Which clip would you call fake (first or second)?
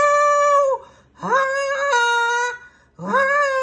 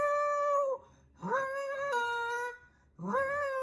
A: second